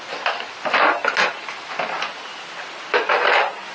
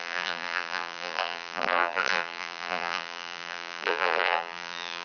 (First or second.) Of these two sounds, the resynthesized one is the second